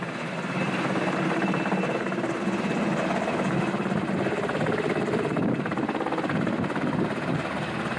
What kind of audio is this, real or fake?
real